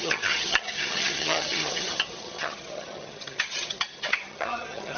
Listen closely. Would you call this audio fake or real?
fake